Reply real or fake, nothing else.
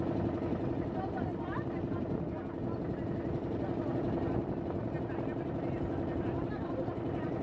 real